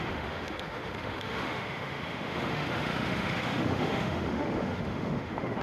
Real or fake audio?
fake